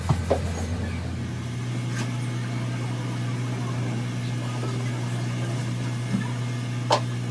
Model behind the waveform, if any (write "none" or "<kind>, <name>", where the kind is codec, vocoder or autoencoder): none